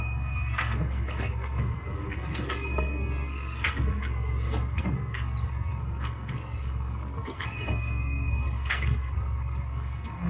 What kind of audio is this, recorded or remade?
remade